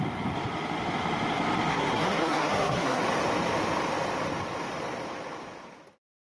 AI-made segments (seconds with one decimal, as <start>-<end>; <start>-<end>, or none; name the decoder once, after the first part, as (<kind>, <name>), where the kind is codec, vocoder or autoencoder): 1.7-3.0 (codec, SNAC)